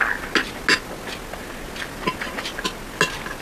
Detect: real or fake real